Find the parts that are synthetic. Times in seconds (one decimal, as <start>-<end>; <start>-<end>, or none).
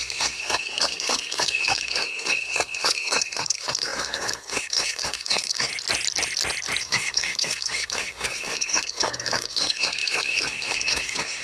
0.0-5.7; 6.8-11.4